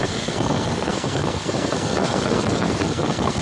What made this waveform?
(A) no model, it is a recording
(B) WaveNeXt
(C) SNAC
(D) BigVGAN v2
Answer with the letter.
C